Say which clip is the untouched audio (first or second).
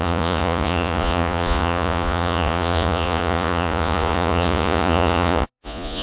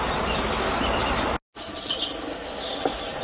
second